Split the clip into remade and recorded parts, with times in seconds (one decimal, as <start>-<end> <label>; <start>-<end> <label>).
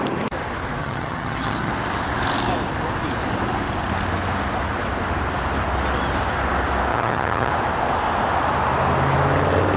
0.0-0.8 recorded; 0.8-1.7 remade; 1.7-6.9 recorded; 6.9-7.5 remade; 7.5-9.8 recorded